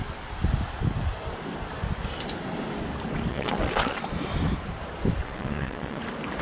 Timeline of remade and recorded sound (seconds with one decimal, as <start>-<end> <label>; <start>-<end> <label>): 0.0-3.3 recorded; 3.3-4.0 remade; 4.0-5.2 recorded; 5.2-6.0 remade; 6.0-6.4 recorded